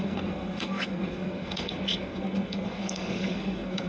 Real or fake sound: fake